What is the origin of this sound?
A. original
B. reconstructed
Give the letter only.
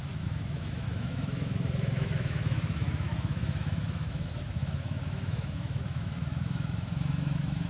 B